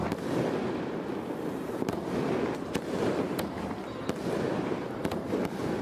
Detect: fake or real real